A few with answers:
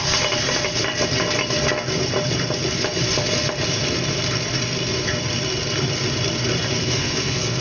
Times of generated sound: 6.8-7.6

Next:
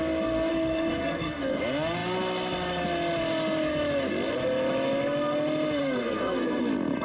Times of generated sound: 0.5-1.6; 5.8-6.6

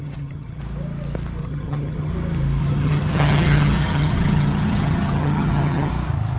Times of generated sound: 0.0-0.6; 1.4-2.1; 2.6-5.9

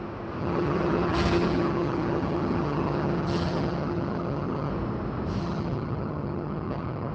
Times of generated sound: 0.4-4.7; 5.4-7.1

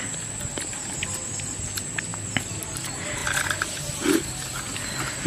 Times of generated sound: none

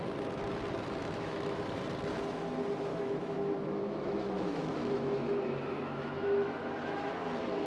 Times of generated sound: 1.0-1.8; 2.9-7.1